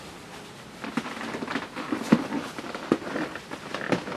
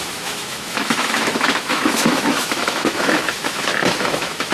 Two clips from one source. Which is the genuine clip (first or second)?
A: first